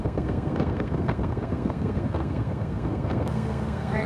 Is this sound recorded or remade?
remade